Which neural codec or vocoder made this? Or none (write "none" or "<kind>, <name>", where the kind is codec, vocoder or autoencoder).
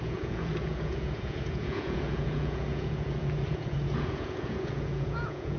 vocoder, Vocos